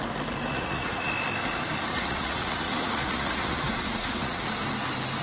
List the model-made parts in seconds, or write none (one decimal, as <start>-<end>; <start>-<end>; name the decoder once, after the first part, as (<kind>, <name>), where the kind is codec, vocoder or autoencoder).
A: 0.5-1.1 (vocoder, Vocos); 1.9-4.5